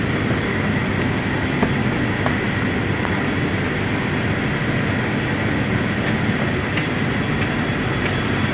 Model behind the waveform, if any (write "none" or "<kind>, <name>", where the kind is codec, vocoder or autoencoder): none